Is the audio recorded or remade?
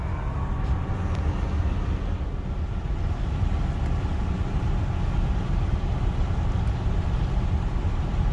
recorded